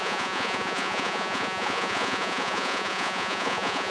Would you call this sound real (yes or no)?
no